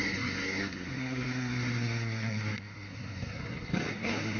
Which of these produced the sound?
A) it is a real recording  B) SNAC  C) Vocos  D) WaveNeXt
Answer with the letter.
B